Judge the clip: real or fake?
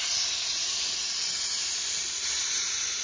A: real